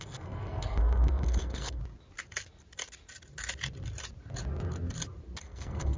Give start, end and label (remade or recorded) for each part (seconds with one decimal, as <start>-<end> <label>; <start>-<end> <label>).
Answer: 0.0-1.8 remade; 1.8-5.4 recorded; 5.4-6.0 remade